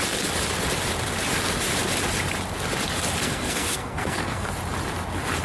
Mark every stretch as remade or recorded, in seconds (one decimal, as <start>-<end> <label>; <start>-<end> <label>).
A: 0.0-3.2 recorded; 3.2-4.5 remade; 4.5-5.4 recorded